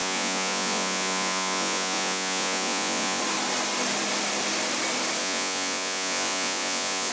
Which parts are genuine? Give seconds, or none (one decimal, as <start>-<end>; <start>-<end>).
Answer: 3.2-5.2